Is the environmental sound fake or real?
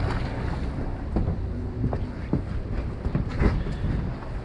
real